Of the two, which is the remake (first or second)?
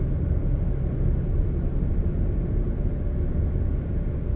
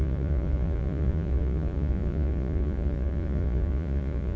second